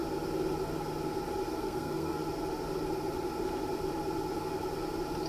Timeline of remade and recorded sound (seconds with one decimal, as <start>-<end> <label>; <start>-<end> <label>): 0.0-1.6 recorded; 1.6-2.2 remade; 2.2-5.3 recorded